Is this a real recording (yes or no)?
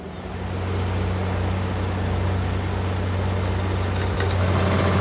yes